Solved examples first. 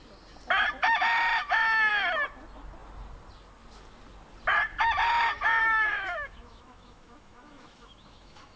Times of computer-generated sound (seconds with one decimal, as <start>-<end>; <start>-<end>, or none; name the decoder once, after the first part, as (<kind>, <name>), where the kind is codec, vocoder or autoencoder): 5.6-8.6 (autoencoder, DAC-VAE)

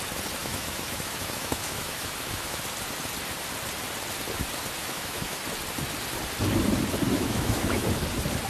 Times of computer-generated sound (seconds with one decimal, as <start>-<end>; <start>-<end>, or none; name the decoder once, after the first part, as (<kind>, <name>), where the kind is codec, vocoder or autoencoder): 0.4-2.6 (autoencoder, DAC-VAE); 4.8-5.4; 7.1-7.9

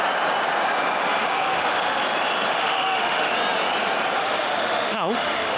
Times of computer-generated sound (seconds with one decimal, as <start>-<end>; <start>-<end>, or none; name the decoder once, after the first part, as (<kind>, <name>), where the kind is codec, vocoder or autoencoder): 1.2-2.0 (autoencoder, DAC-VAE); 2.5-3.3; 4.2-5.6

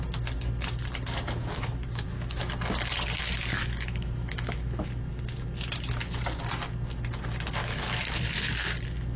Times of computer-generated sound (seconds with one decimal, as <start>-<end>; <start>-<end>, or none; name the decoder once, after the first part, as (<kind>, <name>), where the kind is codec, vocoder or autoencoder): 1.4-2.4 (autoencoder, DAC-VAE); 3.5-4.9; 7.6-8.5

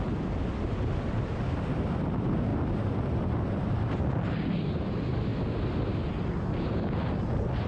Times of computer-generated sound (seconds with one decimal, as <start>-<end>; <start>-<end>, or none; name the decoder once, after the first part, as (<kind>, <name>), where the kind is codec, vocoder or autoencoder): none

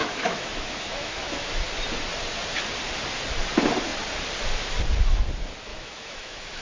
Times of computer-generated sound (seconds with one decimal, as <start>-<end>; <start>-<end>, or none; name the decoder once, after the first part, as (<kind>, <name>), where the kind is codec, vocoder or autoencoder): 0.0-1.6 (autoencoder, DAC-VAE); 5.7-6.6

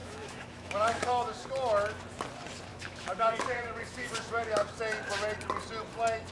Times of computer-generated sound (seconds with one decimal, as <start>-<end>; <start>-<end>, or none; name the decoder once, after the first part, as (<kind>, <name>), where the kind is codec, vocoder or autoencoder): 0.0-1.5 (autoencoder, DAC-VAE); 2.7-4.8